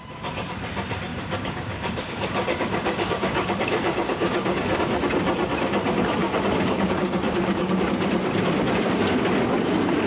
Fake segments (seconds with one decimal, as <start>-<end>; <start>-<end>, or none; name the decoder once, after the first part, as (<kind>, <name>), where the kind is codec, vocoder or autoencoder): 1.1-4.8 (codec, DAC); 6.2-7.9